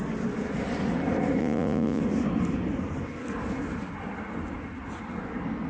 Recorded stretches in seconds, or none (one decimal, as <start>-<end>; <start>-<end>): 0.0-1.4; 2.0-5.7